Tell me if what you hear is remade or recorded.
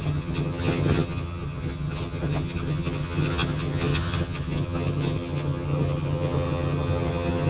remade